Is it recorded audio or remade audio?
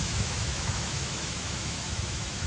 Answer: remade